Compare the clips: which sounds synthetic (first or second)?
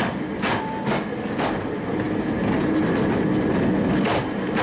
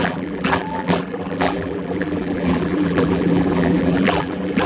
second